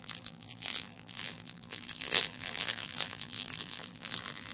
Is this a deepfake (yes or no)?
yes